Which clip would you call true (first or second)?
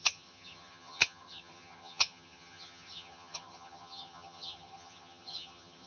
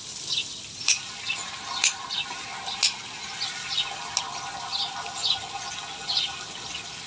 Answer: second